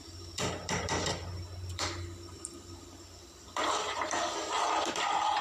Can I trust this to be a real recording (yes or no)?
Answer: no